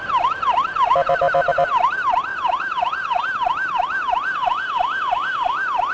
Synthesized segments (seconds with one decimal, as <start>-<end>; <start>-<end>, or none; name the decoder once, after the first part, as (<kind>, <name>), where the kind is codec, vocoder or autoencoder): 2.3-3.2 (vocoder, Vocos)